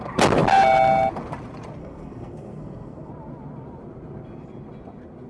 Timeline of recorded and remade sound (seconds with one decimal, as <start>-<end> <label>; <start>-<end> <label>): 0.0-1.8 recorded; 1.8-3.1 remade; 3.1-5.3 recorded